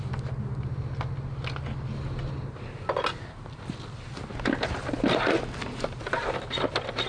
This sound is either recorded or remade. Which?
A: recorded